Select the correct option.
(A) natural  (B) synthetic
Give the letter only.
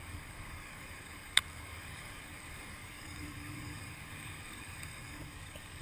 B